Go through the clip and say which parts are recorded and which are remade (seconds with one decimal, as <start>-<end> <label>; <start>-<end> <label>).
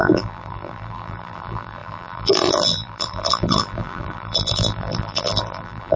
0.0-6.0 remade